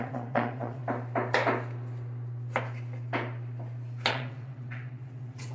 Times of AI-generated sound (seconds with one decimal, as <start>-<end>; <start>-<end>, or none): 0.0-0.8; 4.1-5.5